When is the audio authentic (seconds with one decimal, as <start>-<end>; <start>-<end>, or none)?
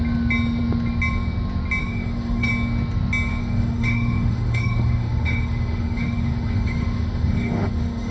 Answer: 0.0-1.8; 2.5-3.4